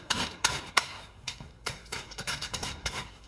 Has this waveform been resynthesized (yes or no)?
yes